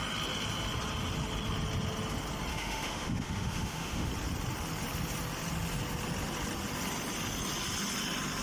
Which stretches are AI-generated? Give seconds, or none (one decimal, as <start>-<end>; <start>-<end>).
2.5-4.1